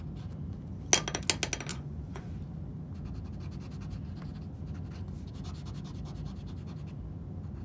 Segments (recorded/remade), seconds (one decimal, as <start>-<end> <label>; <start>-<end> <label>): 0.0-1.7 recorded; 1.7-2.3 remade; 2.3-7.6 recorded